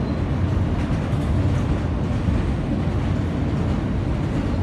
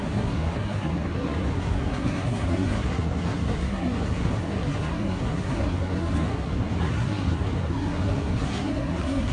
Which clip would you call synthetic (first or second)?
second